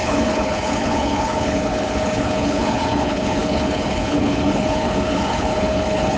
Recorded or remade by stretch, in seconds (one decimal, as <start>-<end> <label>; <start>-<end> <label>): 0.0-6.2 remade

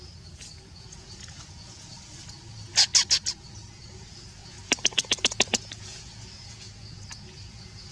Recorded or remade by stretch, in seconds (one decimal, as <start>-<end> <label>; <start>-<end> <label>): 0.0-2.9 remade; 2.9-3.7 recorded; 3.7-7.9 remade

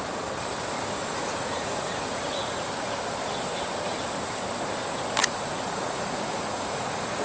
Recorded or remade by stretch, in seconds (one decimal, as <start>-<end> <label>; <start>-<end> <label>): 0.0-1.0 recorded; 1.0-2.7 remade; 2.7-5.2 recorded; 5.2-7.2 remade

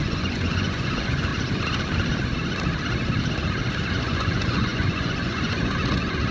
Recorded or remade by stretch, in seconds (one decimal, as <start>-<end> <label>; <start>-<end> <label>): 0.0-1.3 remade; 1.3-3.9 recorded; 3.9-6.3 remade